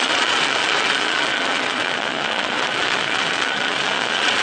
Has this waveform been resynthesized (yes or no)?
yes